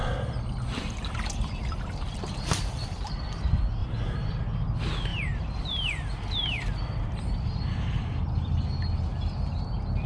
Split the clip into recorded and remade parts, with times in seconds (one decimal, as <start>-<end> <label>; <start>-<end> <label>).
0.0-3.1 remade; 3.1-3.8 recorded; 3.8-4.3 remade; 4.3-5.1 recorded; 5.1-5.6 remade; 5.6-10.1 recorded